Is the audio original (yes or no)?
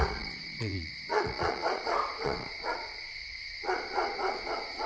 no